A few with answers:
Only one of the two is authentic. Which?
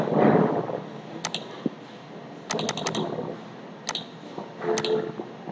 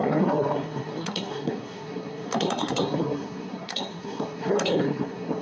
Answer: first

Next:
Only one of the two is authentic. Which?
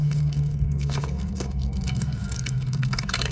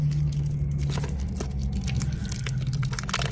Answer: second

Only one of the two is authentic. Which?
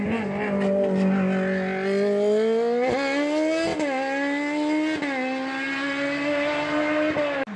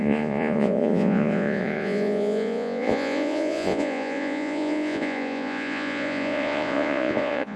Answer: first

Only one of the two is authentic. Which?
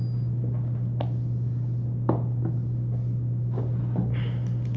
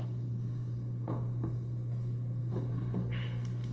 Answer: first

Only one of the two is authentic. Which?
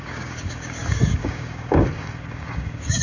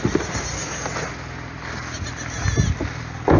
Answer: second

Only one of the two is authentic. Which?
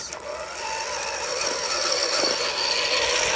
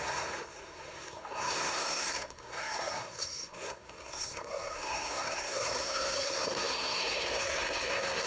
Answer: first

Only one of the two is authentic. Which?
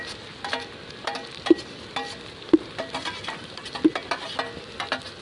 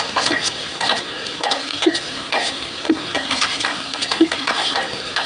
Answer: first